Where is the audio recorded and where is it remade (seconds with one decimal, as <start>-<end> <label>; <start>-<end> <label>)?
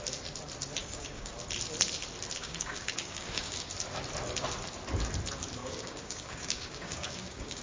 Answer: 0.0-0.8 recorded; 0.8-1.3 remade; 1.3-2.4 recorded; 2.4-3.7 remade; 3.7-5.6 recorded; 5.6-7.6 remade